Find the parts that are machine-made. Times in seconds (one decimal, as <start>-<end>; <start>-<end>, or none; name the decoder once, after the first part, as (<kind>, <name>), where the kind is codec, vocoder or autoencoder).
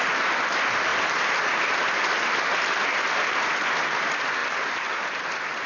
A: 0.9-1.9 (vocoder, BigVGAN v2)